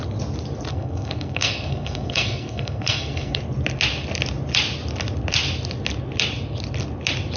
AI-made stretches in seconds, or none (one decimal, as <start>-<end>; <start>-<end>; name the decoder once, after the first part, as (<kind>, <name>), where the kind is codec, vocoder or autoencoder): 0.7-3.4 (codec, SNAC)